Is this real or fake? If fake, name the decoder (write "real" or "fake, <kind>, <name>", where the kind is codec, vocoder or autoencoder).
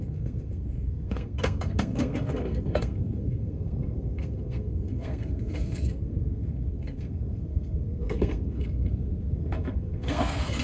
fake, codec, SNAC